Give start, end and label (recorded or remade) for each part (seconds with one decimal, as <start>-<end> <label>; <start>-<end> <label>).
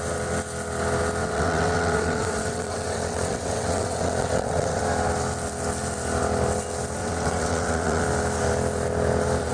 0.0-1.2 recorded; 1.2-4.8 remade; 4.8-7.0 recorded; 7.0-8.0 remade; 8.0-9.5 recorded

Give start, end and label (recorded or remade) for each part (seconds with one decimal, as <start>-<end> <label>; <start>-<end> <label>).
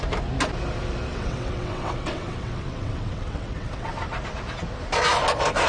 0.0-1.1 recorded; 1.1-3.9 remade; 3.9-5.7 recorded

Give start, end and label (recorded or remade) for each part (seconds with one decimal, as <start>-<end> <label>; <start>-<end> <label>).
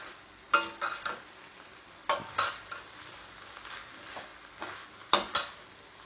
0.0-6.1 recorded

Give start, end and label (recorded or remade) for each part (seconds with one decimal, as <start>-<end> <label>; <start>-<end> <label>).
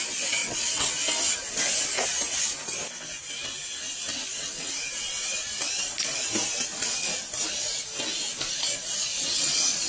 0.0-0.4 recorded; 0.4-0.9 remade; 0.9-4.1 recorded; 4.1-4.7 remade; 4.7-9.1 recorded; 9.1-9.9 remade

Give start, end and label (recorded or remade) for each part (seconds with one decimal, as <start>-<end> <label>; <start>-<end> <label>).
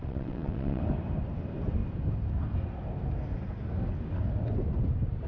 0.0-0.8 remade; 0.8-5.3 recorded